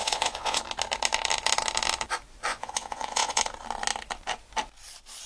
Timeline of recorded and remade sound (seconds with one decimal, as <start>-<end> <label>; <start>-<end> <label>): 0.0-0.6 remade; 0.6-2.5 recorded; 2.5-3.4 remade; 3.4-5.3 recorded